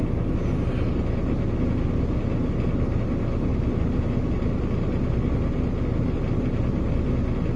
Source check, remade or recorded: recorded